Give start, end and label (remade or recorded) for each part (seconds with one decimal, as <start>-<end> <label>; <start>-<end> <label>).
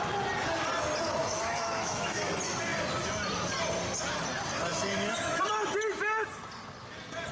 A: 0.0-1.2 recorded; 1.2-2.3 remade; 2.3-4.7 recorded; 4.7-5.4 remade; 5.4-7.3 recorded